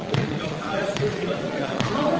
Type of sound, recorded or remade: remade